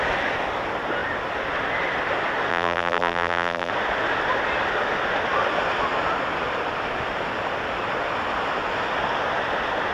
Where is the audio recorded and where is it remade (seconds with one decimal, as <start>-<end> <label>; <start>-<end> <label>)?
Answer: 0.0-2.5 recorded; 2.5-3.7 remade; 3.7-9.9 recorded